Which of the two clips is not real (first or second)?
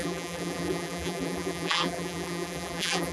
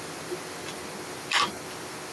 first